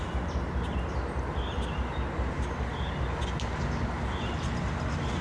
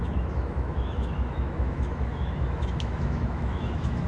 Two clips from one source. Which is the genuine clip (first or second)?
first